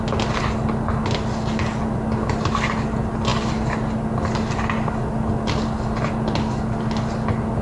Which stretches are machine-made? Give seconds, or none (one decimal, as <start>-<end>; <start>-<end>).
none